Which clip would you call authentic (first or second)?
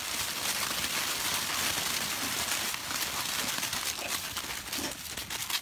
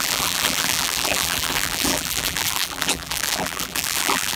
first